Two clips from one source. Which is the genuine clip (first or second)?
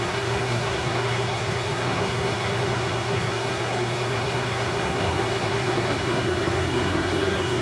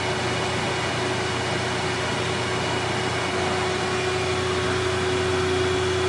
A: second